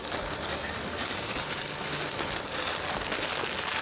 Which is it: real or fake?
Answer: real